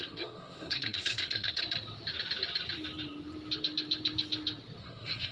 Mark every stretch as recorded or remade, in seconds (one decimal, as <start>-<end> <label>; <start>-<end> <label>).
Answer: 0.0-1.6 remade; 1.6-4.8 recorded; 4.8-5.3 remade